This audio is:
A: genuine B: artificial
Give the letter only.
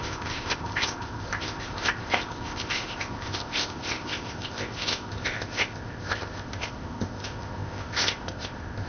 B